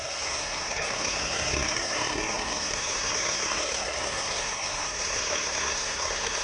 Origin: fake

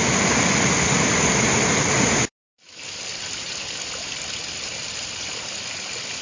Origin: real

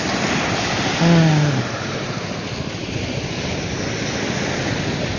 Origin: real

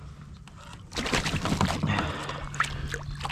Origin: real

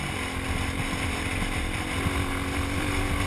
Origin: real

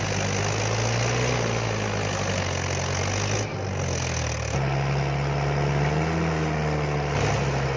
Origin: real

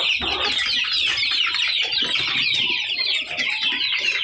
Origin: real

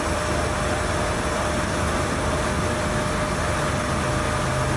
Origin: real